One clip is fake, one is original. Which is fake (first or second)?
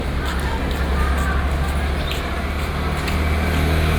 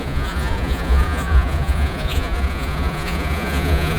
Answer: second